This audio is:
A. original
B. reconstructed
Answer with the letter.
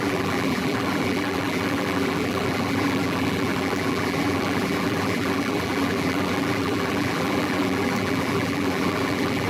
B